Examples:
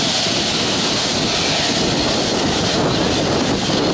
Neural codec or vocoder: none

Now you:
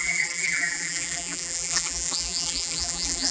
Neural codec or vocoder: vocoder, BigVGAN v2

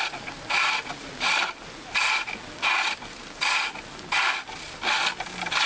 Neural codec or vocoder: none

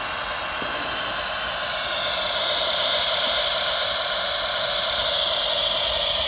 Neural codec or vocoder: none